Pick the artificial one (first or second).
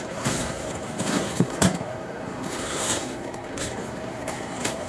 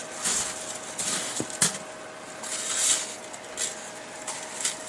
first